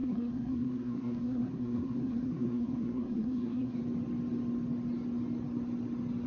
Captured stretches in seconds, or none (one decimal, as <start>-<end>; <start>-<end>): 3.8-6.3